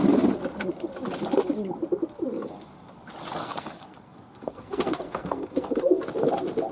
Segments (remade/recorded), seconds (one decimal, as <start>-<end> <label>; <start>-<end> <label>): 0.0-3.4 recorded; 3.4-6.0 remade; 6.0-6.7 recorded